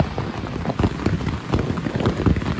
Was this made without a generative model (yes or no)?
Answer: yes